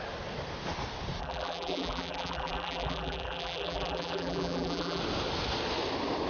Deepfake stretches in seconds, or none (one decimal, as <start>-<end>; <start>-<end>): 1.2-5.0